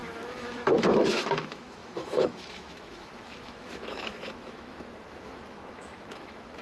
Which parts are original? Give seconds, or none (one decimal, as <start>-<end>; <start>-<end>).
none